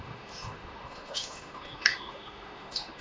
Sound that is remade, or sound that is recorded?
remade